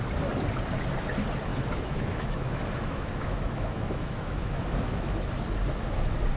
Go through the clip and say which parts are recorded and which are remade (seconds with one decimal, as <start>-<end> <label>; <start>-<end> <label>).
0.0-1.5 recorded; 1.5-5.3 remade; 5.3-6.4 recorded